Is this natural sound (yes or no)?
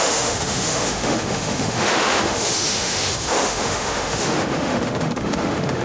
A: no